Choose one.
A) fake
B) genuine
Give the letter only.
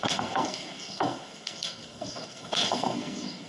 A